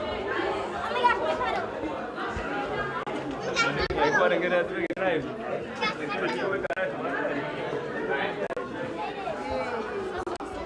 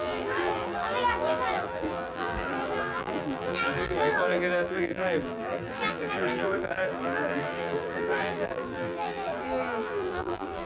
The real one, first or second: first